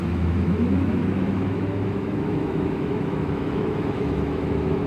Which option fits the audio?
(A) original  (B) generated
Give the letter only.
B